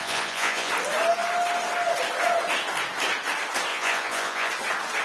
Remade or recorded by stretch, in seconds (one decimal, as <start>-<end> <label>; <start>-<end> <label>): 0.0-0.7 remade; 0.7-3.7 recorded; 3.7-4.5 remade; 4.5-5.0 recorded